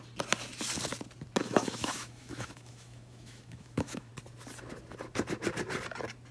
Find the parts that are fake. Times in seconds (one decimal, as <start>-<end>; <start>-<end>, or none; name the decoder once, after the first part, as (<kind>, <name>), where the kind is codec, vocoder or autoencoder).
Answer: 1.4-4.1 (autoencoder, DAC-VAE)